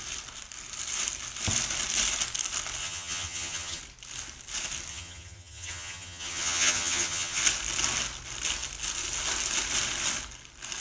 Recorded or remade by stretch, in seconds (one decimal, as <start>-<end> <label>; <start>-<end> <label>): 0.0-2.8 recorded; 2.8-3.8 remade; 3.8-4.9 recorded; 4.9-7.4 remade; 7.4-10.8 recorded